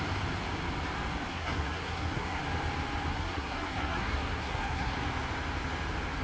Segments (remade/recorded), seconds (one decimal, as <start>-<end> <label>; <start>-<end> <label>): 0.0-1.3 recorded; 1.3-2.4 remade; 2.4-3.1 recorded; 3.1-4.9 remade; 4.9-6.2 recorded